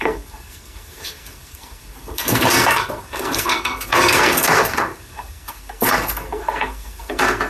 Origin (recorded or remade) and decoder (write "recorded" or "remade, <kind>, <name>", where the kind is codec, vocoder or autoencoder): remade, codec, SNAC